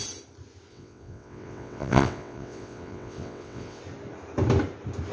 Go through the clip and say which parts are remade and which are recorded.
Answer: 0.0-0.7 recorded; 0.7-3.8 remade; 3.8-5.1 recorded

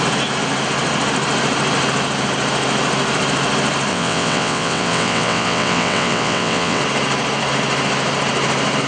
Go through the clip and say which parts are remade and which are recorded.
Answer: 0.0-3.9 recorded; 3.9-6.8 remade; 6.8-8.9 recorded

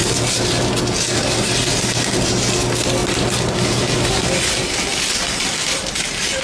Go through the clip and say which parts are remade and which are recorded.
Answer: 0.0-6.4 recorded